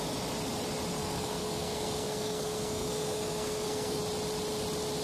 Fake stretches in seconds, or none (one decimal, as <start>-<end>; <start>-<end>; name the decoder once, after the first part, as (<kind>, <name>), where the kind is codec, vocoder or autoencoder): 1.0-4.0 (codec, SNAC)